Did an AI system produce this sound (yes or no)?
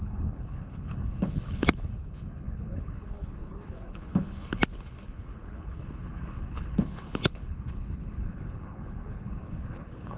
yes